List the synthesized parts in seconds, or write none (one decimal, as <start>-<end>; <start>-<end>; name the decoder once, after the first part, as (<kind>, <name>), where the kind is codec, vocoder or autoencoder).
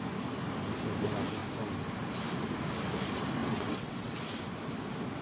3.4-4.2 (vocoder, WaveNeXt)